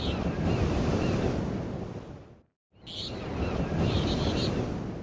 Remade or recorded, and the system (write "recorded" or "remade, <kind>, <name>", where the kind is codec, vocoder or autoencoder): recorded